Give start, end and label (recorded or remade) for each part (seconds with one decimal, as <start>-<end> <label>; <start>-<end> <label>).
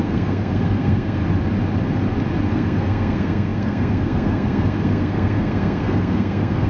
0.0-1.2 remade; 1.2-2.5 recorded; 2.5-6.7 remade